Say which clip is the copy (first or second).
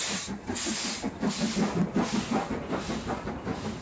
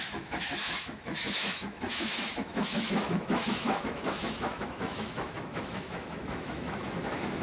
second